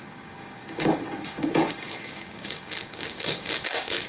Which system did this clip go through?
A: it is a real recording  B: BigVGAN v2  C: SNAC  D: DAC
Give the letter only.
D